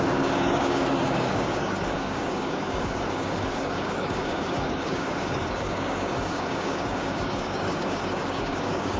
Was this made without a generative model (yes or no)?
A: no